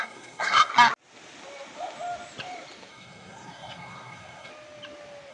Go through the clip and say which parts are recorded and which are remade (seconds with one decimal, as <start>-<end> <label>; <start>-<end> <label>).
0.0-0.7 remade; 0.7-2.9 recorded; 2.9-4.5 remade; 4.5-5.3 recorded